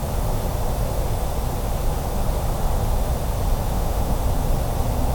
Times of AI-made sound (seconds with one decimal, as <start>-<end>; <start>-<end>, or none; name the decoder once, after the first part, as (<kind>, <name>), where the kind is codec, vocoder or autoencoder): 3.7-4.2 (autoencoder, DAC-VAE)